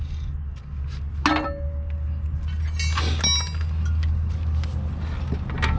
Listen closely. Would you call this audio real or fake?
real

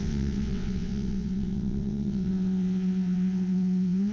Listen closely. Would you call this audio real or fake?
fake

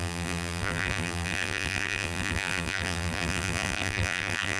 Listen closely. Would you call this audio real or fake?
fake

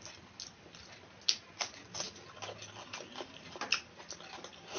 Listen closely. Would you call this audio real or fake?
real